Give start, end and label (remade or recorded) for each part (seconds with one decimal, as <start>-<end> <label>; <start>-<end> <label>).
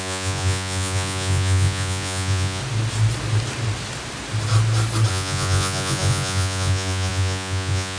0.0-2.6 remade; 2.6-5.1 recorded; 5.1-8.0 remade